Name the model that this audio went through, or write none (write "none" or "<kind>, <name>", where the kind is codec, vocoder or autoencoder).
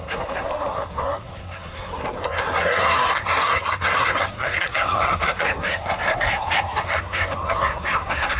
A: codec, SNAC